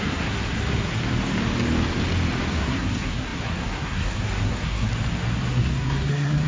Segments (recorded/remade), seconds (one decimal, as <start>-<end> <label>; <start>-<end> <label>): 0.0-1.0 remade; 1.0-2.5 recorded; 2.5-4.9 remade; 4.9-5.5 recorded; 5.5-6.5 remade